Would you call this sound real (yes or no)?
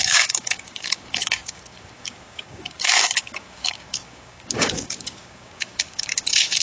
no